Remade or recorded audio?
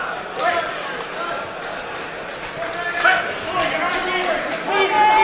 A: recorded